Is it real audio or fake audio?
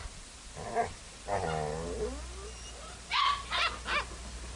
real